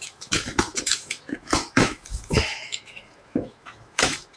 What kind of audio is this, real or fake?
fake